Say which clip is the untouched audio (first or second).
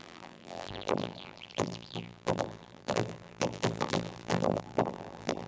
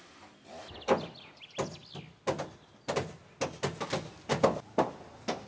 second